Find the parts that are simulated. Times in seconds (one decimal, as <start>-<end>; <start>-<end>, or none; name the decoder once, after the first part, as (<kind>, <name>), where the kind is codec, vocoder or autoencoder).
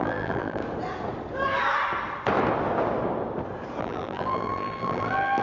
0.0-0.6 (vocoder, BigVGAN v2); 3.8-5.4